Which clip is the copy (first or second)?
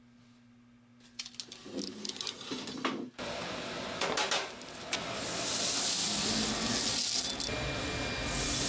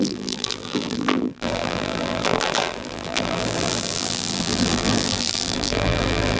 second